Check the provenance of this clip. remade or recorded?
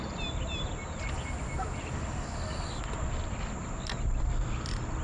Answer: recorded